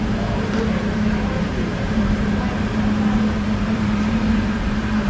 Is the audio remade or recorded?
remade